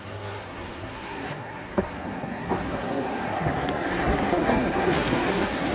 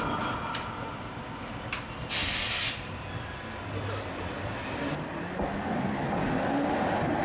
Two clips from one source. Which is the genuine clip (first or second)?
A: second